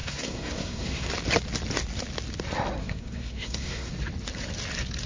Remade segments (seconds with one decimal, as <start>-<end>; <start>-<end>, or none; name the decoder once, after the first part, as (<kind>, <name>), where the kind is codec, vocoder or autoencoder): 0.0-1.1 (codec, SNAC); 2.8-3.9